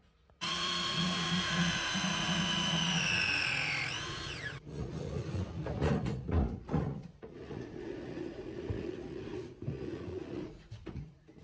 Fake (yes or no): yes